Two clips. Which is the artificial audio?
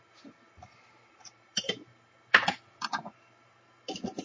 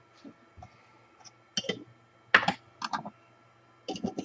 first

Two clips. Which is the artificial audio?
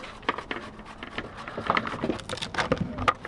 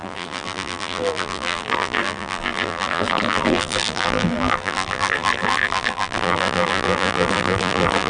second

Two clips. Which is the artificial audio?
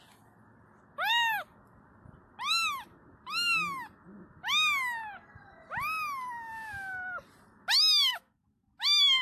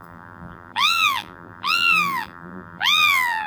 second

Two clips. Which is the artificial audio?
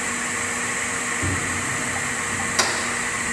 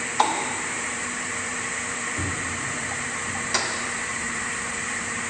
second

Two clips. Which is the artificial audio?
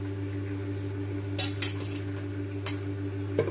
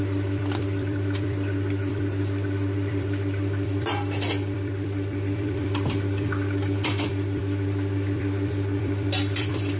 second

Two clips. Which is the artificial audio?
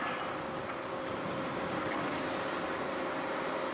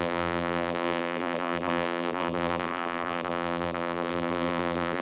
second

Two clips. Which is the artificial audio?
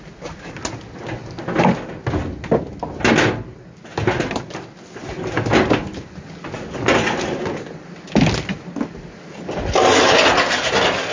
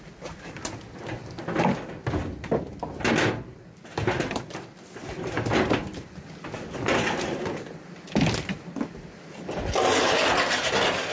second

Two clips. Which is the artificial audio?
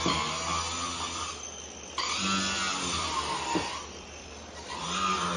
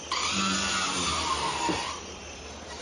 second